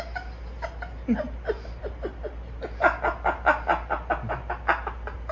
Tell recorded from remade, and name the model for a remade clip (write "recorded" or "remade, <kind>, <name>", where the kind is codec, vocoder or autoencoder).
recorded